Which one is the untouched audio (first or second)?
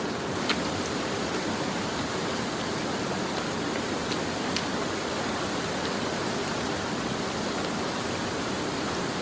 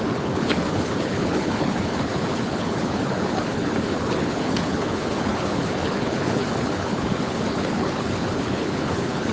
first